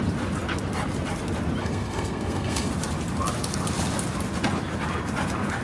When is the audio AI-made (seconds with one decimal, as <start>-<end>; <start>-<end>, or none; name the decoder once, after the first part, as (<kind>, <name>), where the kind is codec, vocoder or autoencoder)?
1.6-2.7 (codec, SNAC)